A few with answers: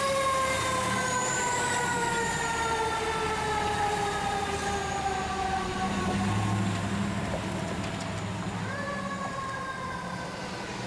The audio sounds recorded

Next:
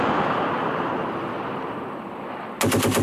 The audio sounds recorded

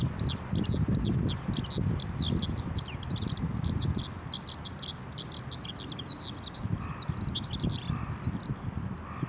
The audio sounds recorded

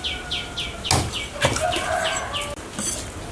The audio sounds recorded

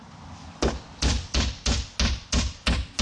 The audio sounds recorded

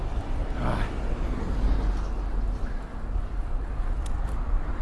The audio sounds recorded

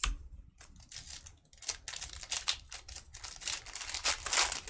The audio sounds recorded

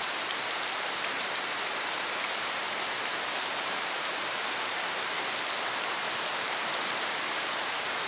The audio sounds remade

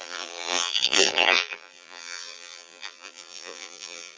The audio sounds remade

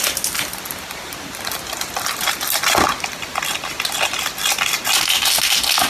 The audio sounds recorded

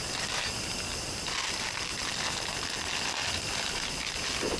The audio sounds recorded